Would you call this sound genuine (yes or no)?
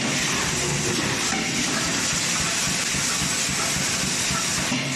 yes